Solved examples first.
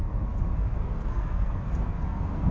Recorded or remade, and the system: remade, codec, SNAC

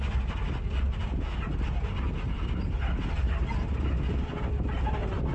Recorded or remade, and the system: recorded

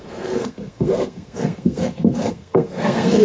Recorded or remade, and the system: remade, codec, SNAC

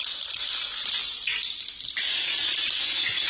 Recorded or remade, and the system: recorded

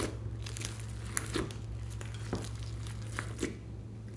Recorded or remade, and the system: recorded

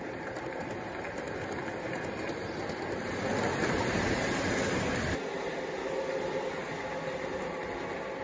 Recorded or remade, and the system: recorded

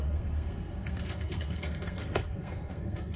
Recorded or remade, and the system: remade, codec, SNAC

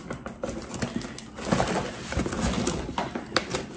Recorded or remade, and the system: recorded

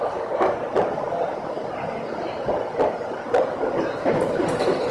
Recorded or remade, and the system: recorded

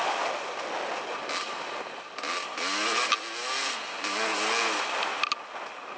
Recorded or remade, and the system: recorded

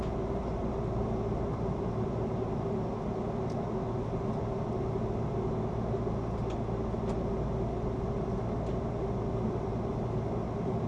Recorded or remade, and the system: recorded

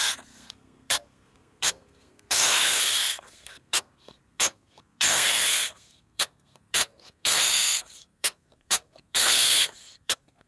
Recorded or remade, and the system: remade, codec, SNAC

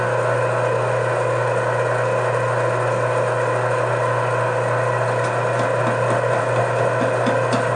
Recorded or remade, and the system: recorded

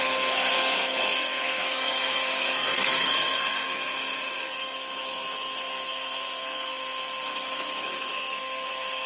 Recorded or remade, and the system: remade, codec, SNAC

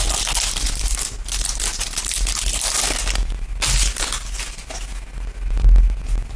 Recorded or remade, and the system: recorded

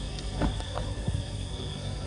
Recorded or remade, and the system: remade, codec, SNAC